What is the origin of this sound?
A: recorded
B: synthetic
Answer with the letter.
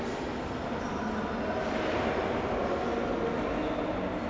A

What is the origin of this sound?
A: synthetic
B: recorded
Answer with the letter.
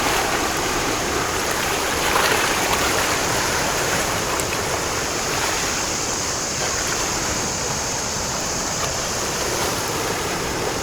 A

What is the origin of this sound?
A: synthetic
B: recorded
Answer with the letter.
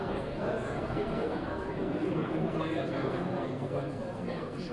A